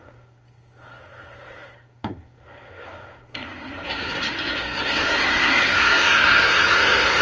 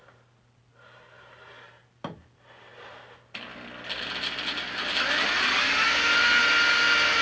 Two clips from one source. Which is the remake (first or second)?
first